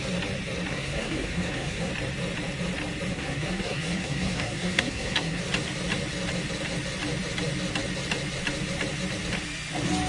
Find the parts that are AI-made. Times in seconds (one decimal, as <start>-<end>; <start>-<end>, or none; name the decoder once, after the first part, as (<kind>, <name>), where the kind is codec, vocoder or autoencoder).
0.7-1.9 (codec, SNAC); 3.1-5.4